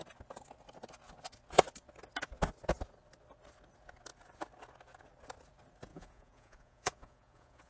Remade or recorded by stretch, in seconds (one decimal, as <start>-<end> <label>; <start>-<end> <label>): 0.0-5.9 recorded; 5.9-7.7 remade